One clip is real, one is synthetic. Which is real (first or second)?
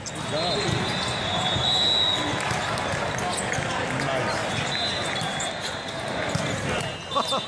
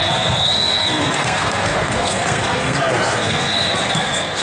first